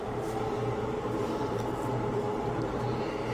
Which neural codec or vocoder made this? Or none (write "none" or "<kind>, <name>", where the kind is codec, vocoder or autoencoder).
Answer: vocoder, BigVGAN v2